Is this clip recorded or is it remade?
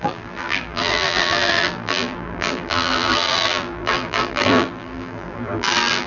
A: remade